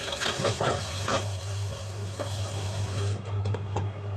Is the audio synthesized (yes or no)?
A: yes